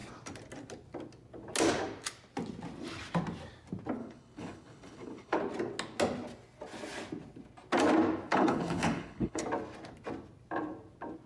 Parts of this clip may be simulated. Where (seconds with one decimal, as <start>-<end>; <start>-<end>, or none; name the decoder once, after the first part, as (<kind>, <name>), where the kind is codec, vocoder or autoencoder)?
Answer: 4.0-5.4 (codec, HILCodec); 8.3-9.4

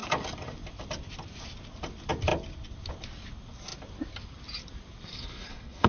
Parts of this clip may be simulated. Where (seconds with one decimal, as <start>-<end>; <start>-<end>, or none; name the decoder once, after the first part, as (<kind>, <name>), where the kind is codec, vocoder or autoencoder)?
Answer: 5.1-5.9 (codec, HILCodec)

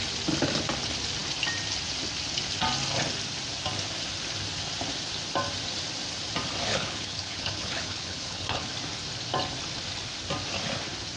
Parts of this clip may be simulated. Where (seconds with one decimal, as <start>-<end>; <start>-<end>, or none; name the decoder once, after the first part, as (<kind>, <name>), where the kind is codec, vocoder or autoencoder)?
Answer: 6.7-8.7 (codec, HILCodec)